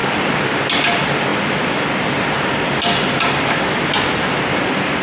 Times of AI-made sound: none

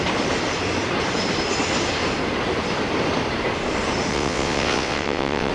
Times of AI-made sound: 4.1-5.5 (vocoder, WaveNeXt)

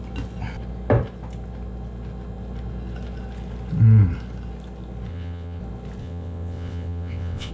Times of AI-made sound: 5.1-5.6 (vocoder, WaveNeXt); 6.0-7.5

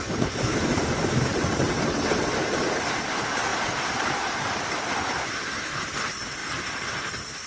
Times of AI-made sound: 1.3-2.3 (vocoder, WaveNeXt)

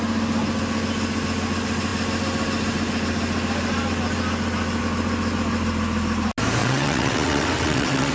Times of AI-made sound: 6.6-8.1 (vocoder, WaveNeXt)

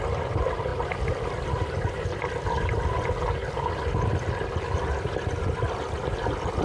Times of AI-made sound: none

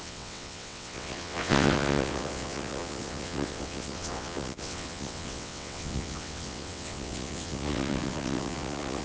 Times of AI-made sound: 0.0-9.0 (vocoder, WaveNeXt)